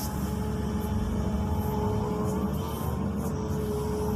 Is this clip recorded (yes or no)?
yes